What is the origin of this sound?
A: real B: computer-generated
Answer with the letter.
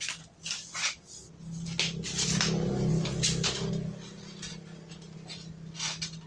A